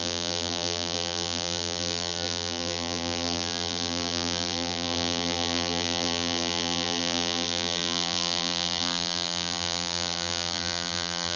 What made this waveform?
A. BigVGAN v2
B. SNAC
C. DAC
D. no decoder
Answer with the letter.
A